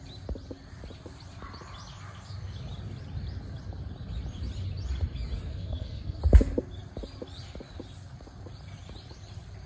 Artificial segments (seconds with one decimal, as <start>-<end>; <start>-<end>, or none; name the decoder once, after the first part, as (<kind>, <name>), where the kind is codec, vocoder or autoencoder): 5.5-6.2 (codec, SNAC)